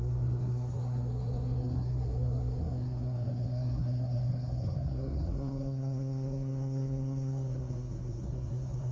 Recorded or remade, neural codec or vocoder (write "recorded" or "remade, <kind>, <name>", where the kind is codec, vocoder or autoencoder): remade, codec, SNAC